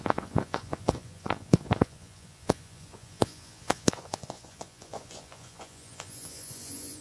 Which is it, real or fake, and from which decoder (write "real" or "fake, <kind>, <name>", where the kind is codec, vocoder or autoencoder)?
fake, vocoder, Vocos